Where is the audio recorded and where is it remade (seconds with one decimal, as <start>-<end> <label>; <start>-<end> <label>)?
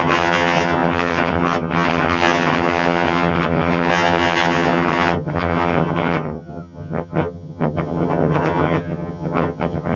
0.0-10.0 remade